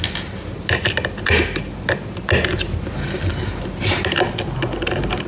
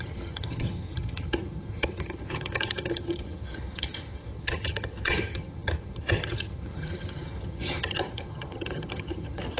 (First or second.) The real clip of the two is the first